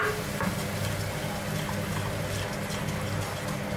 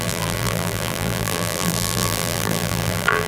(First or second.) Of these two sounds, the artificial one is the second